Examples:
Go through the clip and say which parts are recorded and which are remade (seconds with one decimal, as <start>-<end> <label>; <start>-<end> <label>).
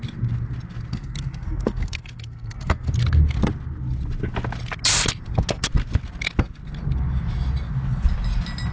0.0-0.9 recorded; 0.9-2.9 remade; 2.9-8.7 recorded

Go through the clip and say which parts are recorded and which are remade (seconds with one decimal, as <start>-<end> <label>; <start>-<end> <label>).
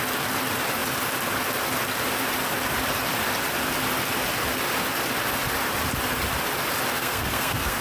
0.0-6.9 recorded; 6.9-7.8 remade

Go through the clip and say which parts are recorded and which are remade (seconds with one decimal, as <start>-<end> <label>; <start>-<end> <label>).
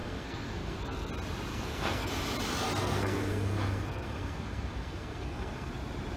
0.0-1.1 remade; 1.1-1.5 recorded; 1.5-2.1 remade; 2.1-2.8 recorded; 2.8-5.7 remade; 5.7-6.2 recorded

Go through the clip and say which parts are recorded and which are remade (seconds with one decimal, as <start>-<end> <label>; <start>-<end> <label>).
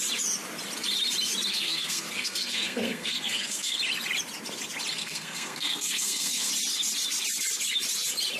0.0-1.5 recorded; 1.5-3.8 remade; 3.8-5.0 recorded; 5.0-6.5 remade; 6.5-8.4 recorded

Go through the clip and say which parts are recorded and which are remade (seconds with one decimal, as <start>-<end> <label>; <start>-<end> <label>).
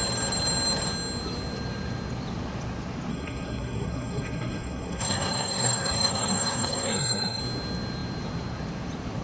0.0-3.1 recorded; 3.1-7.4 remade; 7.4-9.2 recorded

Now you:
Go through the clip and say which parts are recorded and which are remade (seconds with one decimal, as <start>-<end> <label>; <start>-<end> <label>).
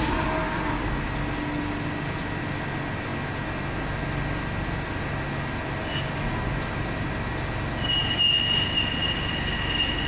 0.0-10.1 recorded